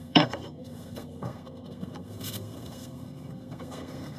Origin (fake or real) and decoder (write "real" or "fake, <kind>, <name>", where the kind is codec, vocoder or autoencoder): fake, codec, SNAC